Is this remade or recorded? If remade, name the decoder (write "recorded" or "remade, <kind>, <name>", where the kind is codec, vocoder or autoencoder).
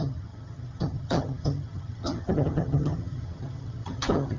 remade, vocoder, HiFi-GAN